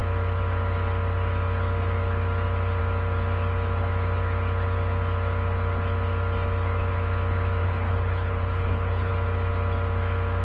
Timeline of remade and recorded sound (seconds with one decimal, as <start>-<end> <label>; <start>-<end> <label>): 0.0-7.6 recorded; 7.6-9.1 remade; 9.1-10.4 recorded

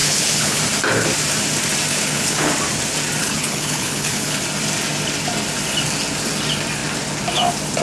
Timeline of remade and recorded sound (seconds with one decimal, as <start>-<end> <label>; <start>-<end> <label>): 0.0-0.6 remade; 0.6-1.9 recorded; 1.9-2.5 remade; 2.5-3.2 recorded; 3.2-4.4 remade; 4.4-7.8 recorded